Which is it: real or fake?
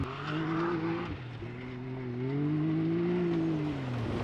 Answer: real